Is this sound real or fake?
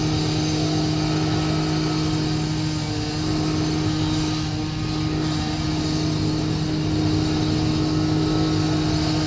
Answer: real